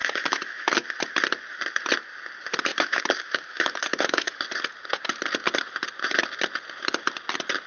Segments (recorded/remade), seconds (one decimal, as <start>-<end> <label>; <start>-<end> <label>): 0.0-1.1 remade; 1.1-2.7 recorded; 2.7-4.4 remade; 4.4-7.7 recorded